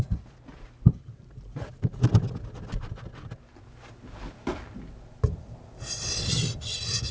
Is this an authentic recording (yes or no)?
yes